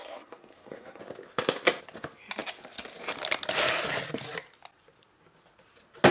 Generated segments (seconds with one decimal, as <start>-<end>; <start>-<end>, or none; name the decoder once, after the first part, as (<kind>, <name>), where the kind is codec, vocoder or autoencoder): 0.0-1.0 (codec, SNAC)